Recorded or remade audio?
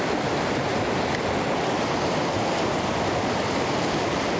recorded